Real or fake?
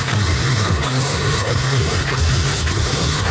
fake